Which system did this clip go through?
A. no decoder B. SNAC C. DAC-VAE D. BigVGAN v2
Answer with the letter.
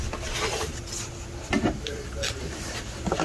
A